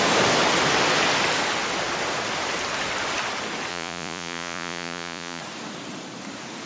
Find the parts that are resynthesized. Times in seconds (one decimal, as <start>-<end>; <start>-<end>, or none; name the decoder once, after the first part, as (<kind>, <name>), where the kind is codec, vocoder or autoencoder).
3.7-5.4 (vocoder, Vocos)